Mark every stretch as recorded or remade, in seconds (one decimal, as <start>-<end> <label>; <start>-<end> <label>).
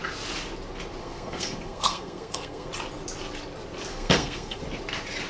0.0-1.0 recorded; 1.0-2.7 remade; 2.7-3.9 recorded; 3.9-4.6 remade; 4.6-5.3 recorded